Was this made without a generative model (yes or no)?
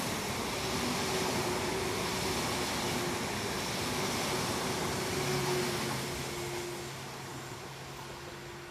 yes